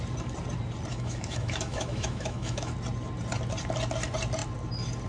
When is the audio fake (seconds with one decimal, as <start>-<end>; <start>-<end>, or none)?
0.9-2.7